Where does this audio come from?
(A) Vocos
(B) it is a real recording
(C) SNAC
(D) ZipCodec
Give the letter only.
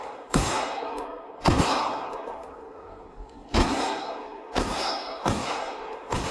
C